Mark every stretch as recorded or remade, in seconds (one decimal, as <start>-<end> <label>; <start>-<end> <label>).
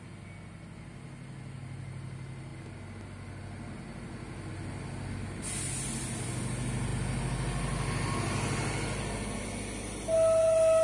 0.0-10.8 recorded